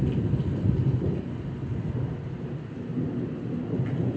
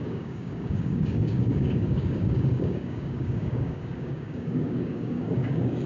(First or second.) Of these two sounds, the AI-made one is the second